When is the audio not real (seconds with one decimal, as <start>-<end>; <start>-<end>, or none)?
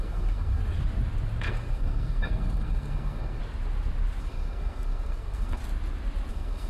0.0-0.6; 1.4-3.4; 4.2-5.6; 6.3-6.7